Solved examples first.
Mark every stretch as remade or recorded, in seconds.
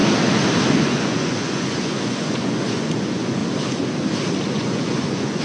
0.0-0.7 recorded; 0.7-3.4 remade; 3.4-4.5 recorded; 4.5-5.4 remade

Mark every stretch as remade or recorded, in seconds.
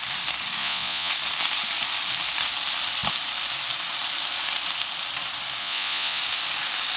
0.0-0.6 recorded; 0.6-1.1 remade; 1.1-5.6 recorded; 5.6-6.2 remade; 6.2-7.0 recorded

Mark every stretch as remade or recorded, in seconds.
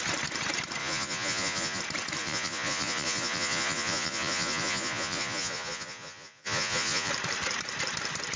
0.0-0.8 recorded; 0.8-1.8 remade; 1.8-2.2 recorded; 2.2-7.1 remade; 7.1-8.4 recorded